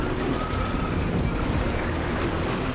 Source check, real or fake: real